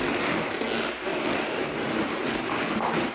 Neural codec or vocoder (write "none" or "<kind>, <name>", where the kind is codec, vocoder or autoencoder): none